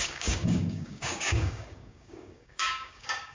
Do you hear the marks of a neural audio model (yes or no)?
yes